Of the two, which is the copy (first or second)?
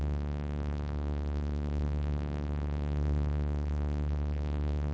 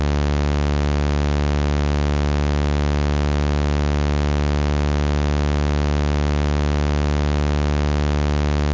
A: first